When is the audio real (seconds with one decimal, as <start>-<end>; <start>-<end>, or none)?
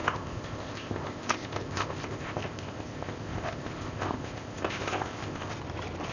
5.5-6.1